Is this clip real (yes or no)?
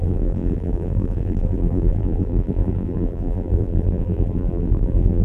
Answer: no